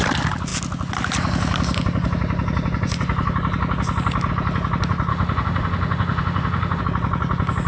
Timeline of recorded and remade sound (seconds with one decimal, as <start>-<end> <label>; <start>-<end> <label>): 0.0-5.1 recorded; 5.1-6.8 remade; 6.8-7.7 recorded